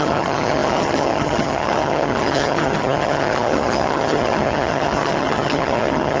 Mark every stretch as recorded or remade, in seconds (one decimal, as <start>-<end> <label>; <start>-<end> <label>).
0.0-6.2 remade